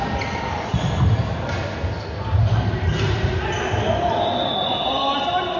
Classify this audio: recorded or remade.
recorded